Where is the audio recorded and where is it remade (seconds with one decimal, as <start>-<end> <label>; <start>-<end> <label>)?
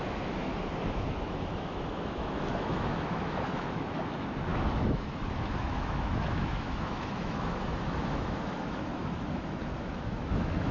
0.0-0.5 remade; 0.5-1.1 recorded; 1.1-10.7 remade